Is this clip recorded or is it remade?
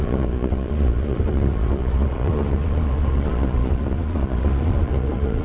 remade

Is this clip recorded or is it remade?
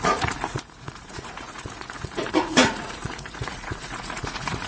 remade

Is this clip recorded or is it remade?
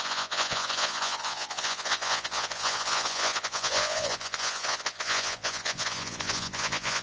remade